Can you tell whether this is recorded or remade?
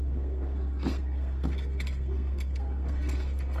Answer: remade